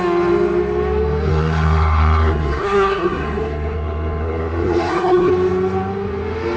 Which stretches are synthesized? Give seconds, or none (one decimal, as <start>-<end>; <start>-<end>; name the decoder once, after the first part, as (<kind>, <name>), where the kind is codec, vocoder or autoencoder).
1.3-5.3 (codec, SNAC)